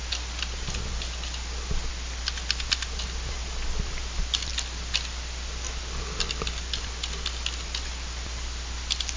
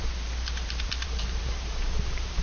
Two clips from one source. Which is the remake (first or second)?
second